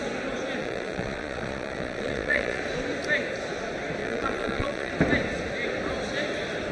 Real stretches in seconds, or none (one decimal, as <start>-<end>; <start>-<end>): 0.0-0.6; 2.6-4.0; 4.9-6.7